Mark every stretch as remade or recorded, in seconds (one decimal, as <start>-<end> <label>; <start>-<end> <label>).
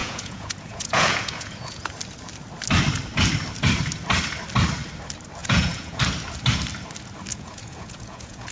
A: 0.0-1.9 remade; 1.9-5.4 recorded; 5.4-6.0 remade; 6.0-7.3 recorded; 7.3-8.5 remade